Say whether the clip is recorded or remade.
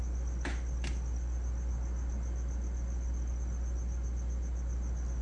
recorded